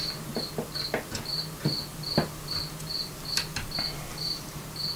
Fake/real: real